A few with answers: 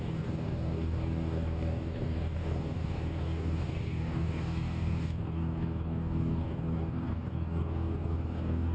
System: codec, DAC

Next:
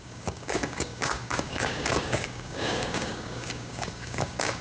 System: codec, DAC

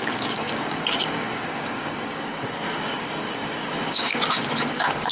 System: codec, DAC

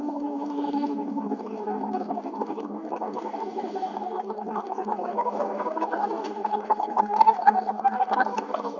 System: codec, DAC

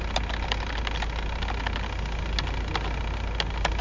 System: none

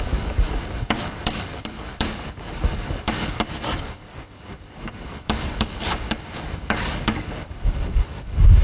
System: codec, DAC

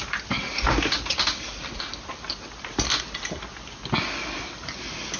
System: none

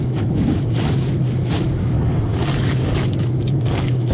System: codec, DAC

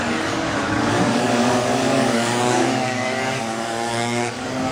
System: codec, DAC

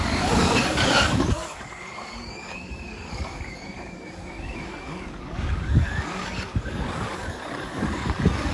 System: codec, DAC